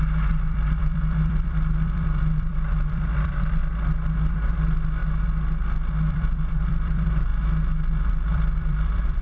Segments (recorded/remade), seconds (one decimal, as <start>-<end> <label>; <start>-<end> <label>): 0.0-3.6 remade; 3.6-4.3 recorded; 4.3-5.0 remade; 5.0-6.1 recorded; 6.1-7.3 remade; 7.3-7.9 recorded; 7.9-9.2 remade